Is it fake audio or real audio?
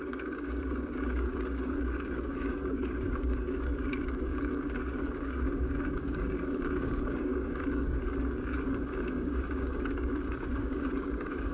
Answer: fake